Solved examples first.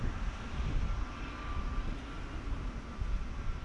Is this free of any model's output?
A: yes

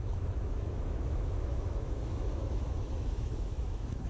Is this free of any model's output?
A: no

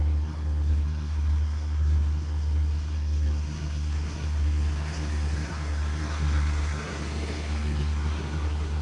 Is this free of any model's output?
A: no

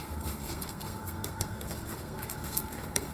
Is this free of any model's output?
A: no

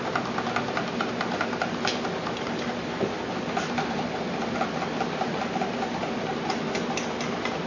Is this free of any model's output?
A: yes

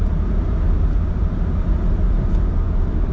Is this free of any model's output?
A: yes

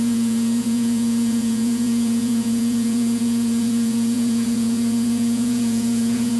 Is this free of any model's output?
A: no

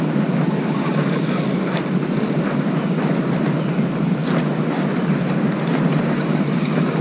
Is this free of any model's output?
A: yes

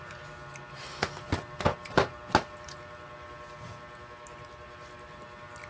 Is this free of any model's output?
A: yes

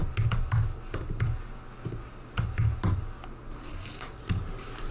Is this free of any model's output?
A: yes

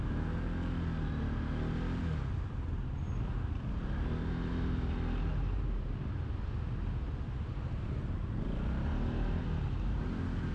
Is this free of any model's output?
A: yes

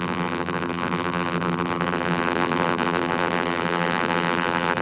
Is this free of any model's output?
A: no